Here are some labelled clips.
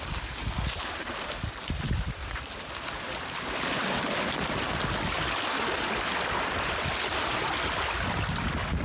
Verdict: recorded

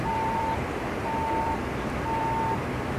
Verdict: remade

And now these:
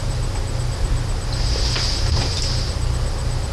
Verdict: recorded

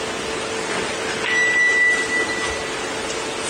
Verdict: recorded